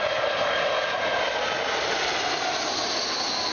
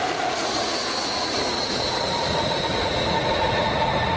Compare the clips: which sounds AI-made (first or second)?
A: second